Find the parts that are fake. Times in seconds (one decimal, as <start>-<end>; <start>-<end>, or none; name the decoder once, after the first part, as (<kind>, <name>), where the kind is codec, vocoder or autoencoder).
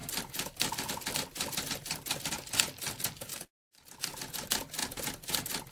0.0-0.9 (vocoder, BigVGAN v2); 3.3-4.0